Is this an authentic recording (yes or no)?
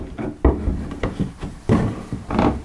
yes